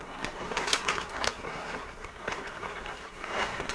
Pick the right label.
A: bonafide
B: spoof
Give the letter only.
B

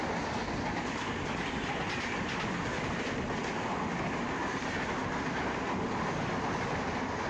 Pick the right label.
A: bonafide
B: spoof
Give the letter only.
A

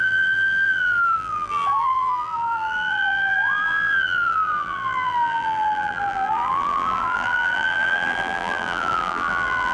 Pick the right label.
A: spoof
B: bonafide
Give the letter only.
A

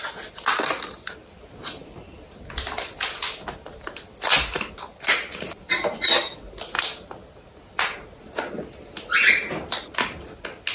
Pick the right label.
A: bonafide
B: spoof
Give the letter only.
A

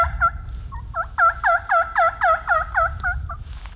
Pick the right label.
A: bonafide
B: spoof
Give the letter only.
A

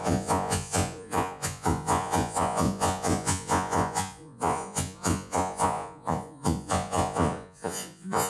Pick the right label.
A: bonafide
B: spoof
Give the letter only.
B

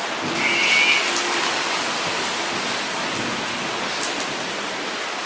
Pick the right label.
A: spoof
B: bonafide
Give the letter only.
B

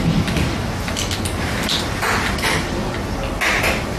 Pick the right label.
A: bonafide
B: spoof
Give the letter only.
A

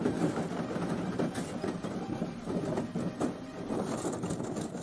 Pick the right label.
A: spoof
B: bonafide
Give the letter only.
A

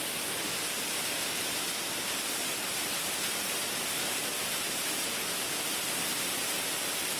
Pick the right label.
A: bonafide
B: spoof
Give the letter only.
A